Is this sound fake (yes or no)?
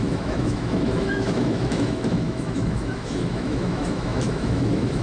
yes